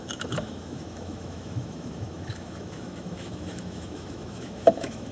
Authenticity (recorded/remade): remade